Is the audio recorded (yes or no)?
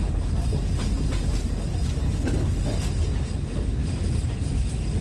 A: yes